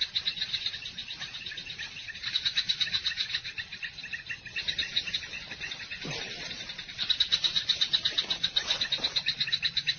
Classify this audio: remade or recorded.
remade